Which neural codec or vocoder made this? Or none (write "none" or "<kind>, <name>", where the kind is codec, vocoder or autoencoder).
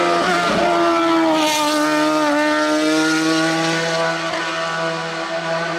none